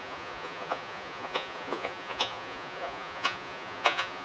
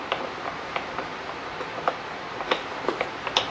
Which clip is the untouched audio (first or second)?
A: second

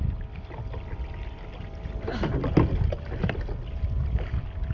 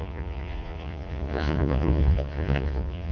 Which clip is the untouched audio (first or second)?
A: first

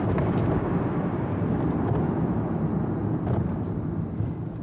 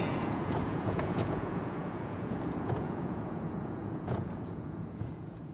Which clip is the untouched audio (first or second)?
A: first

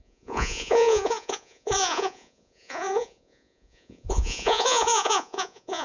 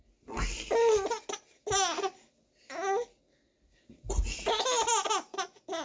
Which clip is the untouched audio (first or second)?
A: second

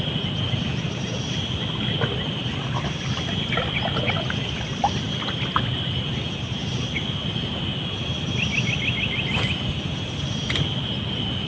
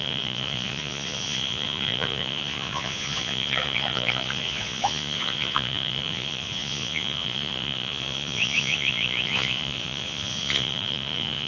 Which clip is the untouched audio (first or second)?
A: first